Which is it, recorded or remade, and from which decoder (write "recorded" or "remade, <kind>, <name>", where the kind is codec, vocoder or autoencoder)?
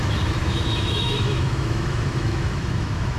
remade, autoencoder, DAC-VAE